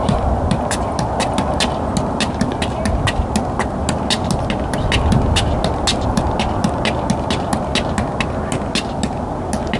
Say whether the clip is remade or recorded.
recorded